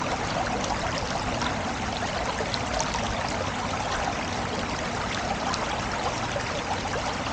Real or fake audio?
real